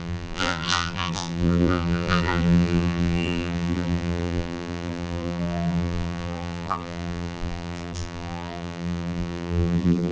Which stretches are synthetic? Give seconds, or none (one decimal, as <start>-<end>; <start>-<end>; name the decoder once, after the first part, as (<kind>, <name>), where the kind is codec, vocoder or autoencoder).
0.0-10.1 (vocoder, BigVGAN v2)